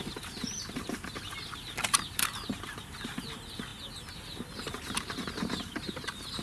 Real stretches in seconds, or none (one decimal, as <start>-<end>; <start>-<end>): 0.0-6.4